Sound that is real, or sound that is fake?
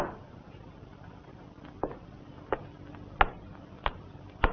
real